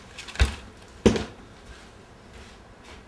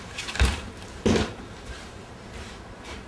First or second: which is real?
first